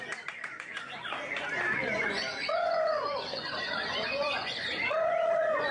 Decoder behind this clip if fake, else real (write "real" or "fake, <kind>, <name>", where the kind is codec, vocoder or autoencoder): fake, vocoder, Vocos